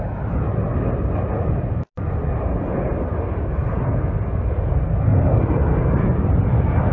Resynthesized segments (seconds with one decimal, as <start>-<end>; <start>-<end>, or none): none